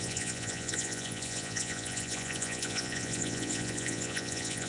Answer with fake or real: fake